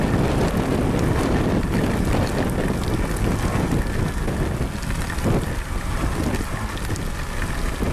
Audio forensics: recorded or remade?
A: recorded